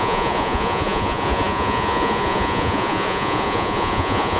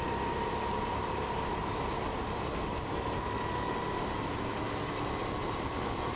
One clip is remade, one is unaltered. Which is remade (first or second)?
first